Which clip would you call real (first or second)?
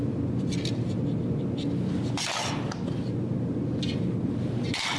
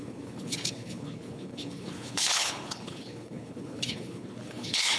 first